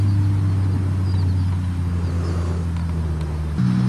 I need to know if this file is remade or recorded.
recorded